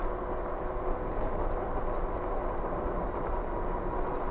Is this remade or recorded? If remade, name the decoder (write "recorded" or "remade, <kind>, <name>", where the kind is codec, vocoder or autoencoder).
recorded